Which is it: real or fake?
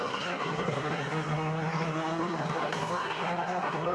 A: fake